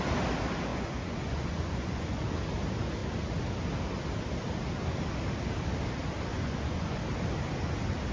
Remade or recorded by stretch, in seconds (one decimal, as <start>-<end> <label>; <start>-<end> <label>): 0.0-0.7 recorded; 0.7-2.2 remade; 2.2-6.3 recorded; 6.3-7.0 remade; 7.0-8.1 recorded